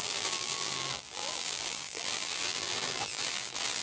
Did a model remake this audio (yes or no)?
yes